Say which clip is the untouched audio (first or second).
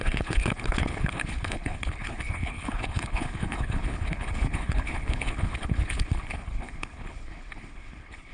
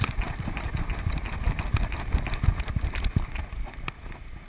second